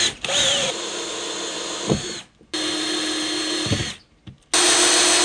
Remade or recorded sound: recorded